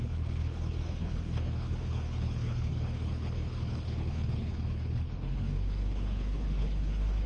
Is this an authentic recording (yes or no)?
no